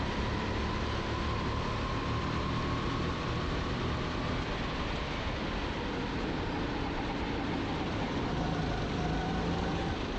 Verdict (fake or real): real